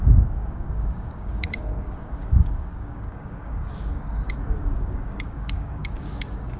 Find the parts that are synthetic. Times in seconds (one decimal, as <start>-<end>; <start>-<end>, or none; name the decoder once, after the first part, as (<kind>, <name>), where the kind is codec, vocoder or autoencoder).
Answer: 0.0-6.6 (codec, DAC)